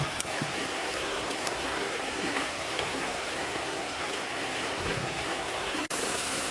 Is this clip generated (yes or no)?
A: yes